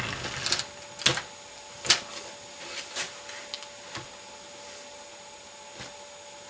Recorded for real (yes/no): yes